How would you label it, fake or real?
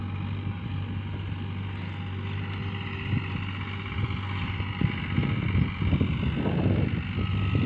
real